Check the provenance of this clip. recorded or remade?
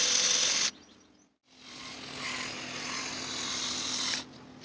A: recorded